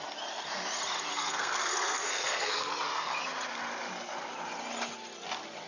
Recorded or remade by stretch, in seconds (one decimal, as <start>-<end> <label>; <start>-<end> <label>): 0.0-1.1 recorded; 1.1-2.7 remade; 2.7-5.7 recorded